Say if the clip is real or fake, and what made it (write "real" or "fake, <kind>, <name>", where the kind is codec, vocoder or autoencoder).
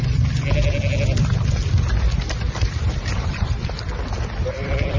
real